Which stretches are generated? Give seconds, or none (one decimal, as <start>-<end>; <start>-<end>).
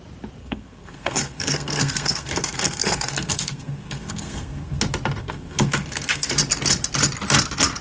0.4-4.8; 5.2-6.3